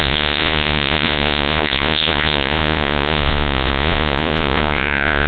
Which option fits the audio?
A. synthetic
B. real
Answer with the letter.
A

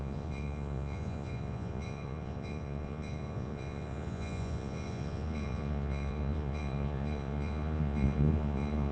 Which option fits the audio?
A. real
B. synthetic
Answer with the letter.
B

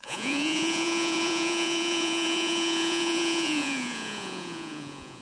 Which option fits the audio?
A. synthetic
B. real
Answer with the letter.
A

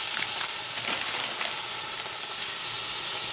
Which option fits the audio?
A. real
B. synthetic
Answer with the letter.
A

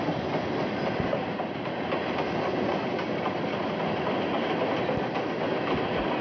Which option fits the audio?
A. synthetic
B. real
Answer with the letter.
B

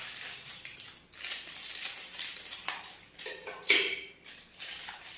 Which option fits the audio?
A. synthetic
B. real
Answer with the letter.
B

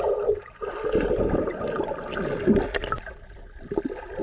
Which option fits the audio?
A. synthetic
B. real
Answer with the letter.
B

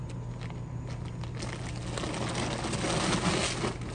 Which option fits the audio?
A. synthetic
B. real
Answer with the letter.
B